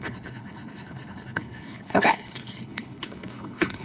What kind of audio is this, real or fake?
fake